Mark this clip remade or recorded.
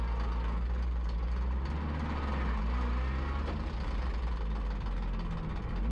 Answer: recorded